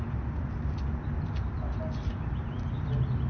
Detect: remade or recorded remade